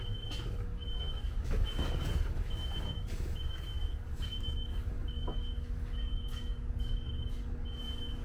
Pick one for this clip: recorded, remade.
remade